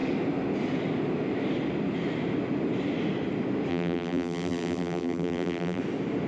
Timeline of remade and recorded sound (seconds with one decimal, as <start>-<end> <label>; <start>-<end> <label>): 0.0-3.7 recorded; 3.7-5.8 remade; 5.8-6.3 recorded